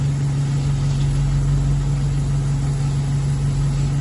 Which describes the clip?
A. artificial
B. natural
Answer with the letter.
B